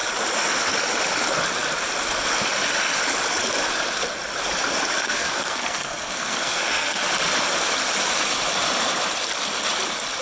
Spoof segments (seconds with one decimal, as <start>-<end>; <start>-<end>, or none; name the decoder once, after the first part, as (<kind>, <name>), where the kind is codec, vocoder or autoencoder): 5.0-7.0 (codec, SNAC)